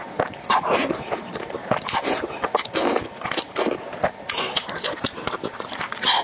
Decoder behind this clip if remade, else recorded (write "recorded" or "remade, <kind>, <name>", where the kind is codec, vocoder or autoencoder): recorded